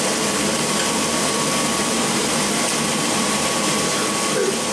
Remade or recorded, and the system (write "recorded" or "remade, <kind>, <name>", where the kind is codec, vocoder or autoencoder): recorded